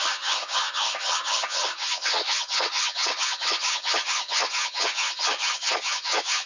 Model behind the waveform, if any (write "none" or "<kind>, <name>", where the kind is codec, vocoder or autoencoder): vocoder, HiFi-GAN